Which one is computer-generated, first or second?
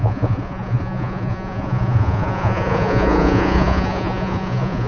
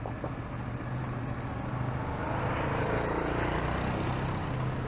first